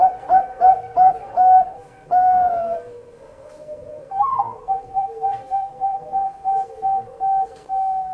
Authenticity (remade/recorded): remade